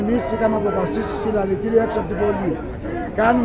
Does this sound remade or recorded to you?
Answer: recorded